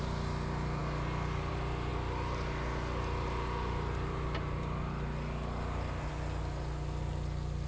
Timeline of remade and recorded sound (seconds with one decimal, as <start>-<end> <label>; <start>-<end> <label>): 0.0-7.7 recorded